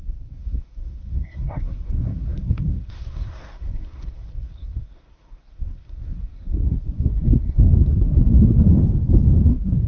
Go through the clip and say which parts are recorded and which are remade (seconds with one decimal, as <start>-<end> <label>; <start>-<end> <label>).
0.0-8.7 remade; 8.7-9.4 recorded; 9.4-9.9 remade